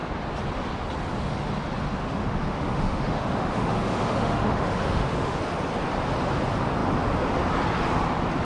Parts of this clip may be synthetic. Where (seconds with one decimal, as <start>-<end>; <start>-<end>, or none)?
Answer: 2.2-5.4